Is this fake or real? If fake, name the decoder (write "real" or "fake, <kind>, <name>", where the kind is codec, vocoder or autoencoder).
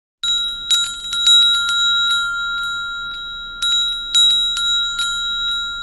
real